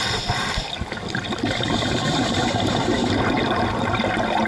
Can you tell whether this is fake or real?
real